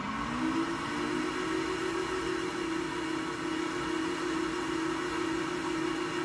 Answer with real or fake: real